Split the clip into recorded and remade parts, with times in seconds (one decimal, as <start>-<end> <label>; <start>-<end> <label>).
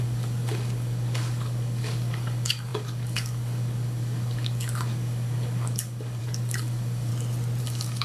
0.0-7.1 remade; 7.1-7.6 recorded; 7.6-8.0 remade